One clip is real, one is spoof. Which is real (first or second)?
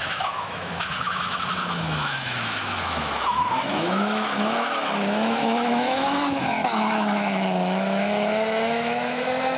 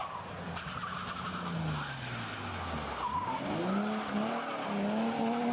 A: second